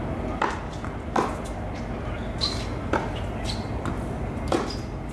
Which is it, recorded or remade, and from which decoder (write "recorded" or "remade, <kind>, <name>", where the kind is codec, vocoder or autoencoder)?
recorded